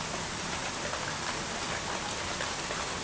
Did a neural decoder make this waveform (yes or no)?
no